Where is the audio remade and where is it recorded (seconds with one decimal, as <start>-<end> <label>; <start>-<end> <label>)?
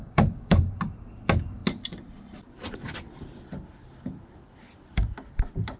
0.0-0.7 remade; 0.7-5.8 recorded